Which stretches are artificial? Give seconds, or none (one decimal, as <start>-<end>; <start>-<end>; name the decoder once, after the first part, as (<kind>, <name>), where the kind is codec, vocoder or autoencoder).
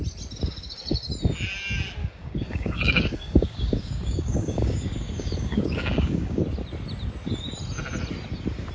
2.0-6.4 (codec, DAC)